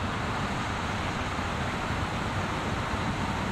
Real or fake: real